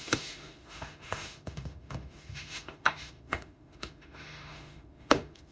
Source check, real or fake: fake